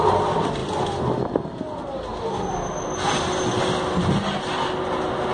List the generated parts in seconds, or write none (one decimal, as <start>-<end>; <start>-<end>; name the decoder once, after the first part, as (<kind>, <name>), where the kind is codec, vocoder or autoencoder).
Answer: none